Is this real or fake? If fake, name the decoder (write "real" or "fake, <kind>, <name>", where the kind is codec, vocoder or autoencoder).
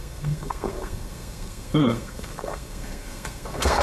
fake, codec, SNAC